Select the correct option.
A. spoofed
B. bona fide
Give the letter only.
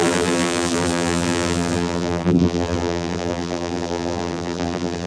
A